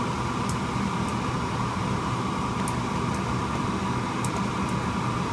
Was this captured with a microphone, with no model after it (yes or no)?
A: yes